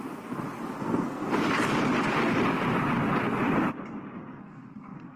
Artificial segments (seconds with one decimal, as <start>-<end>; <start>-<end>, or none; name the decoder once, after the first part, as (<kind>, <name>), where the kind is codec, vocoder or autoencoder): 0.8-1.3 (codec, SNAC); 4.3-5.2